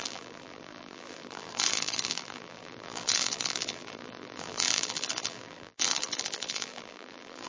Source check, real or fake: fake